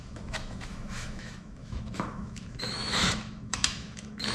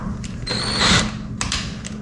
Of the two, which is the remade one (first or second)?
first